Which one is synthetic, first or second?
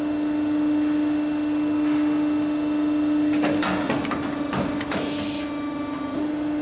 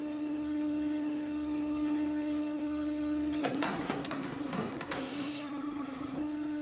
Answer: second